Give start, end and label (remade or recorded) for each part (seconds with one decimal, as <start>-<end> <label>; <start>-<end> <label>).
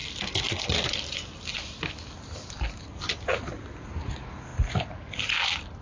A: 0.0-5.8 recorded